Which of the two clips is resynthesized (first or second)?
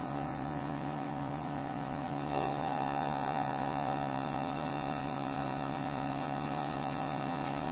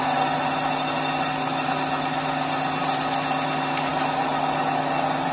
first